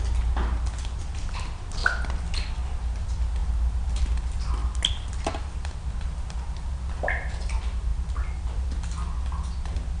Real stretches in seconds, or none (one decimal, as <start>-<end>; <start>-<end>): 0.0-10.0